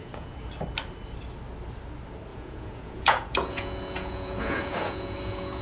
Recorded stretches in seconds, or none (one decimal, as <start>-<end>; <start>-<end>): 0.5-2.3